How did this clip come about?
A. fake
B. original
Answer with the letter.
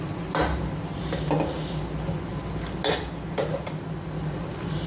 B